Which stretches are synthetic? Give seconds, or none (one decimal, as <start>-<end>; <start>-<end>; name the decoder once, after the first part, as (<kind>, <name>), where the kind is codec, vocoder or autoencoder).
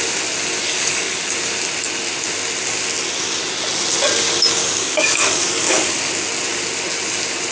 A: 0.6-1.2 (codec, DAC); 4.6-6.1